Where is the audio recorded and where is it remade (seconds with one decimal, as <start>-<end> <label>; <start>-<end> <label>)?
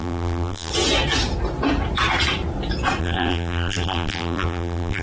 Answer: 0.0-0.7 remade; 0.7-3.0 recorded; 3.0-5.0 remade